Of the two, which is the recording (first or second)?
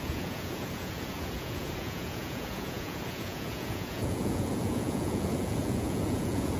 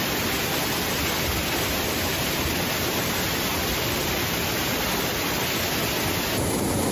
second